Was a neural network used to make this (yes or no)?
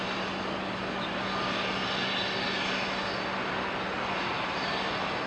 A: no